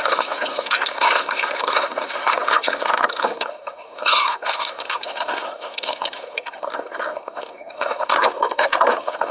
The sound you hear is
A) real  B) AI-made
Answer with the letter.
B